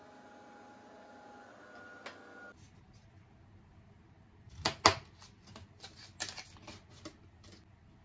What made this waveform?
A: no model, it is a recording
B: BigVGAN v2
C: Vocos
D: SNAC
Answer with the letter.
A